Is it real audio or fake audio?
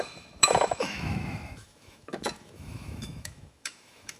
fake